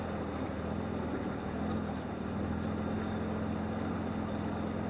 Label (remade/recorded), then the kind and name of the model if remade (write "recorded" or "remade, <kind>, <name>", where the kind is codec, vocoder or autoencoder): recorded